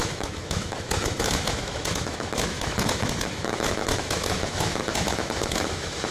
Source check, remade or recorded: remade